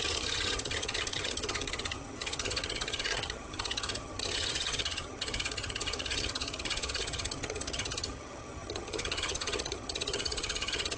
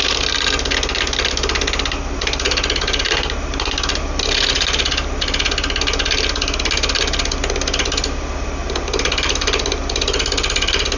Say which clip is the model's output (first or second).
first